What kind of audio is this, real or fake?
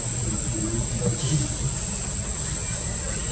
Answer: real